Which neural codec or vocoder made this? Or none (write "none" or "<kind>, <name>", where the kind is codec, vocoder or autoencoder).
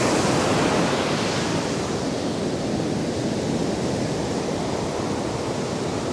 none